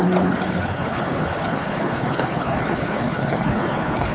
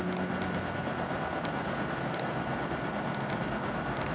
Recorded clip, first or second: second